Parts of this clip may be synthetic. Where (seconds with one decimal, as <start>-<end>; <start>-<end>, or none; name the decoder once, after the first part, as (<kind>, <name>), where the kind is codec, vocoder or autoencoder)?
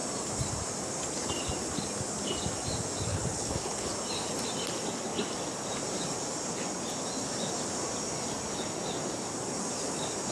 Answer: 3.1-3.9 (codec, HILCodec)